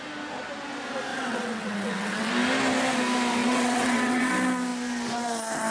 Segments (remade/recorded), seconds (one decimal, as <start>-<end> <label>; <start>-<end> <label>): 0.0-1.1 recorded; 1.1-2.3 remade; 2.3-3.4 recorded; 3.4-4.3 remade; 4.3-5.7 recorded